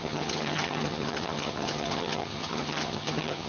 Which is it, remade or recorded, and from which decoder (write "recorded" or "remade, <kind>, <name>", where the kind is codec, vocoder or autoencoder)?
remade, vocoder, HiFi-GAN